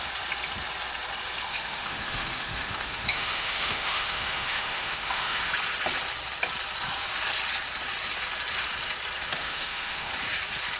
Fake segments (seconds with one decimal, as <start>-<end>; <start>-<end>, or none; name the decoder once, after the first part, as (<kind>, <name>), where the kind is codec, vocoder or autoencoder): 1.5-5.5 (autoencoder, DAC-VAE); 9.4-10.1

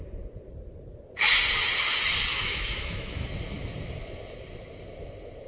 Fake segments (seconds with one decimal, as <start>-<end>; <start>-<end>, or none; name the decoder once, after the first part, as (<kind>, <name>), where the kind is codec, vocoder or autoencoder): 2.3-3.3 (autoencoder, DAC-VAE)

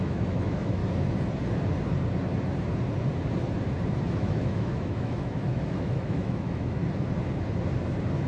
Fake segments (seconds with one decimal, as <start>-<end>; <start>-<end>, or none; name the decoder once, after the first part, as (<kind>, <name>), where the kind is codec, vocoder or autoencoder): 0.0-0.8 (autoencoder, DAC-VAE); 4.1-6.8

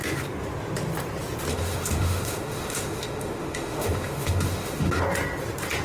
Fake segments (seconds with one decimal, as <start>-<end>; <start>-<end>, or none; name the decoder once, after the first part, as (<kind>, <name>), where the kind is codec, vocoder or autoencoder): 1.5-5.0 (autoencoder, DAC-VAE)